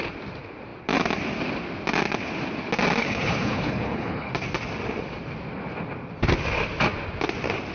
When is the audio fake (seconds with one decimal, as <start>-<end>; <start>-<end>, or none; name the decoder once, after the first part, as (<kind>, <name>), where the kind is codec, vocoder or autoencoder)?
3.0-4.3 (codec, HILCodec)